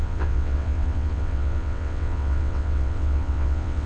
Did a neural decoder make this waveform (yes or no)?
yes